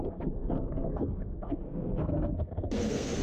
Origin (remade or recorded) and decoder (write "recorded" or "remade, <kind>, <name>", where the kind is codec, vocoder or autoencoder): remade, codec, SNAC